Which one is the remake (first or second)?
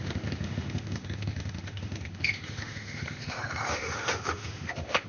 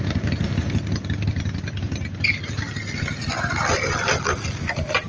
first